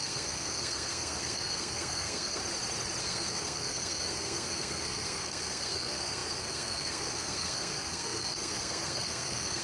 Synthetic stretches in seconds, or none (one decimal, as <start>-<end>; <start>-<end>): 0.0-2.4; 3.0-9.6